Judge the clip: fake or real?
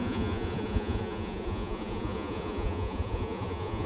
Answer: fake